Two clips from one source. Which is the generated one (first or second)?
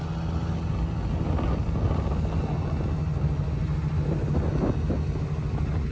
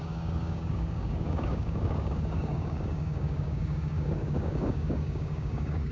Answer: second